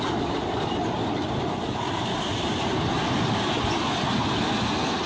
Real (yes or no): yes